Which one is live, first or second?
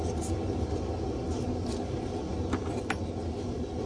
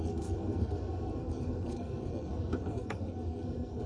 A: first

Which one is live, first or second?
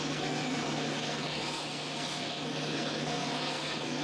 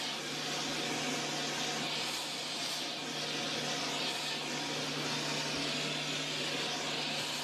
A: second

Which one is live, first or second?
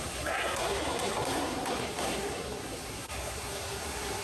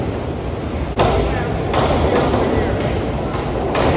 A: second